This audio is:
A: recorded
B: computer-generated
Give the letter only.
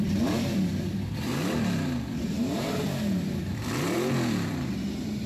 B